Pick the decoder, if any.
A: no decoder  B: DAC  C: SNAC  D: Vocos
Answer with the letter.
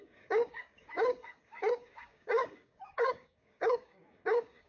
B